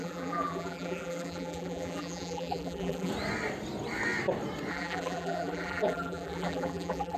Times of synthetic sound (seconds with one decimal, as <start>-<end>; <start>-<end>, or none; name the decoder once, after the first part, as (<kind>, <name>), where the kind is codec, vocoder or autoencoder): 0.0-3.1 (vocoder, BigVGAN v2); 4.7-7.2